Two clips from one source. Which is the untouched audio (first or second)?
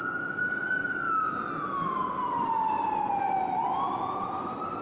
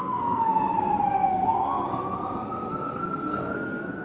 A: first